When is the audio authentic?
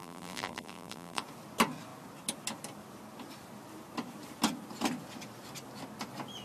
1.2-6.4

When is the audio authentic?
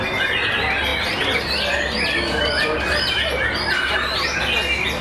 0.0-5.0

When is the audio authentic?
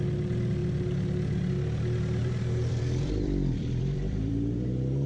0.0-2.2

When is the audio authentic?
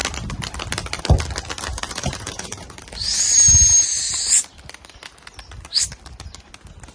0.0-1.7; 2.8-6.9